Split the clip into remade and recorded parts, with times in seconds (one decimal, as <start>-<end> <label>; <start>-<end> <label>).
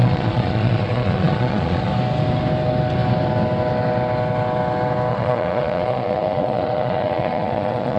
0.0-1.9 remade; 1.9-5.1 recorded; 5.1-8.0 remade